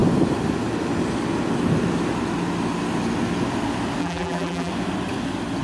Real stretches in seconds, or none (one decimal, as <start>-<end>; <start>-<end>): 0.0-4.0; 4.7-5.6